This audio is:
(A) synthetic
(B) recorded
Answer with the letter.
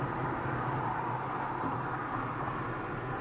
B